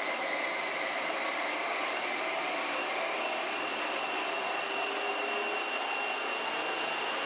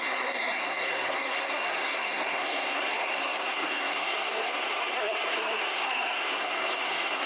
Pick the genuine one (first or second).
first